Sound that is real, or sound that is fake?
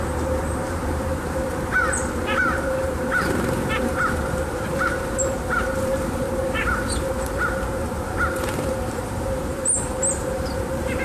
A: fake